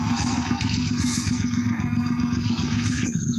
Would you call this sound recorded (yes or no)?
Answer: no